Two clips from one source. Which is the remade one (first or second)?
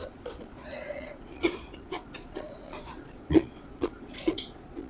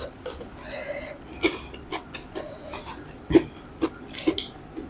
first